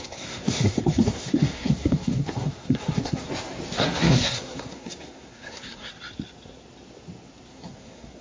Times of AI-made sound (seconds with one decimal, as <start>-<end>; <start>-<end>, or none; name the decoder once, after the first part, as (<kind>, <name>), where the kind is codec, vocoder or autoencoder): 0.0-3.3 (codec, SNAC); 3.8-5.9; 7.5-8.2